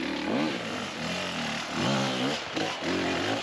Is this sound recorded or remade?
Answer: recorded